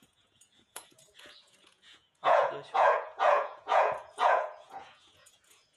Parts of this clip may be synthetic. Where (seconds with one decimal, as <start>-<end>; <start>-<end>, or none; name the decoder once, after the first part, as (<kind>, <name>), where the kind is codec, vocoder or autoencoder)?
0.0-5.8 (vocoder, Vocos)